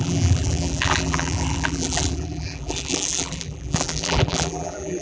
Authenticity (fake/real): fake